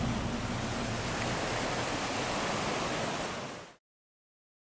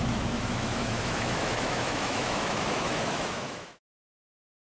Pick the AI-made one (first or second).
second